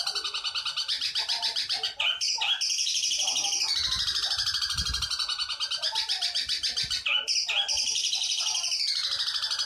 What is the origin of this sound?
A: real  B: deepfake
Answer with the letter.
A